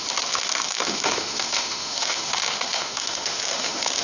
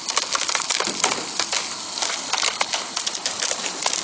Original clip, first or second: second